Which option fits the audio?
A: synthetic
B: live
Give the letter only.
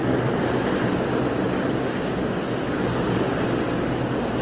B